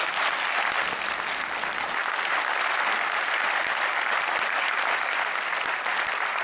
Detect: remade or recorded recorded